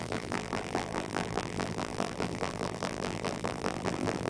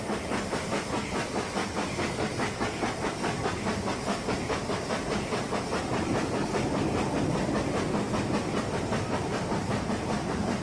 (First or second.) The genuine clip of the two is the second